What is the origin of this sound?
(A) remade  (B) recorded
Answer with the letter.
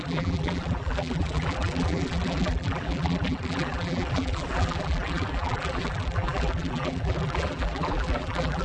A